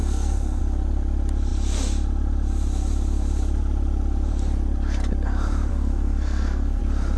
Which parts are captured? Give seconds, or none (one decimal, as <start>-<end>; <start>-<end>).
0.6-5.7; 6.8-7.2